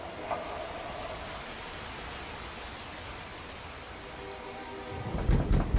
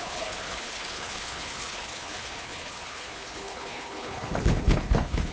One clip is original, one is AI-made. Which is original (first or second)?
first